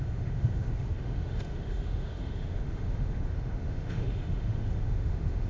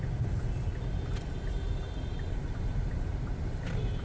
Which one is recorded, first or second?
second